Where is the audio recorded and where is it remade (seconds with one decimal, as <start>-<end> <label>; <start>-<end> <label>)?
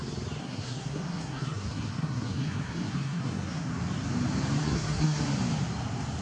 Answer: 0.0-0.4 recorded; 0.4-3.7 remade; 3.7-4.6 recorded; 4.6-5.2 remade; 5.2-6.2 recorded